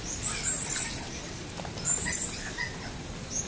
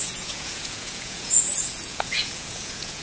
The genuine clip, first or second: first